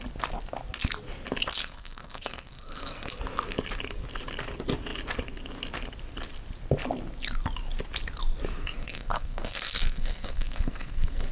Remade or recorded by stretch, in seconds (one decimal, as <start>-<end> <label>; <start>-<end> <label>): 0.0-1.6 recorded; 1.6-3.2 remade; 3.2-8.6 recorded; 8.6-11.3 remade